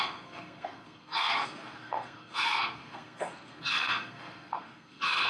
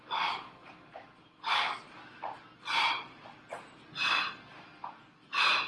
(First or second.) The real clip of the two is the second